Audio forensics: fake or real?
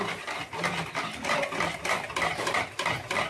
real